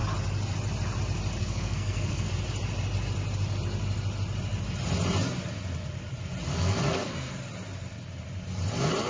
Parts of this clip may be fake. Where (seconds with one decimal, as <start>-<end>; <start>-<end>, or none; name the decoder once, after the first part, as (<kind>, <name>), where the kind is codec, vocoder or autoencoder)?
1.4-2.3 (codec, SNAC); 6.5-7.3